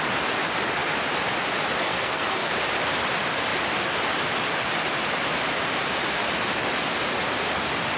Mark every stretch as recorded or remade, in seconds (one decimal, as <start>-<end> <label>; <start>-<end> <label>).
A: 0.0-1.9 recorded; 1.9-2.5 remade; 2.5-8.0 recorded